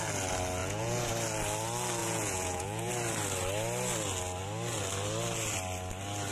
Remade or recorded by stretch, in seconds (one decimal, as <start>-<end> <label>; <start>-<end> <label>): 0.0-0.6 recorded; 0.6-1.1 remade; 1.1-2.0 recorded; 2.0-2.9 remade; 2.9-6.3 recorded